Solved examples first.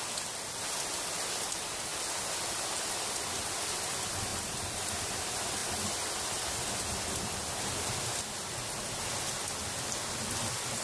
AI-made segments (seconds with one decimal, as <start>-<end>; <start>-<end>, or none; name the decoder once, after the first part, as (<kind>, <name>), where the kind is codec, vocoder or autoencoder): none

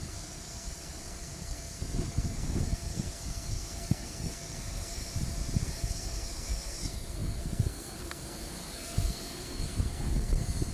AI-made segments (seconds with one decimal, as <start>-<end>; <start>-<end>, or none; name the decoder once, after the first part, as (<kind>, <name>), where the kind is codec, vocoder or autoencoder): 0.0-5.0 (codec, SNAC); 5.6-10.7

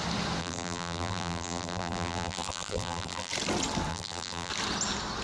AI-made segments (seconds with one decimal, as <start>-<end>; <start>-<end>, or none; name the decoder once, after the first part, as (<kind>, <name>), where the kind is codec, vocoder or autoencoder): 0.4-3.3 (vocoder, BigVGAN v2); 3.9-4.5